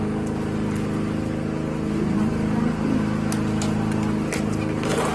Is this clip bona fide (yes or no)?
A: yes